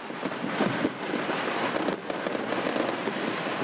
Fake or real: real